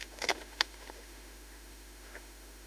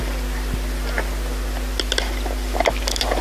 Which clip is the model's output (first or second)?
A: first